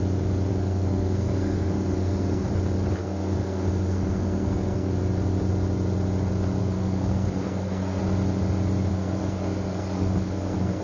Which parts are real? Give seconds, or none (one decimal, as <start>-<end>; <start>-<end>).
0.0-0.5; 2.5-3.0; 4.9-6.6; 8.0-8.9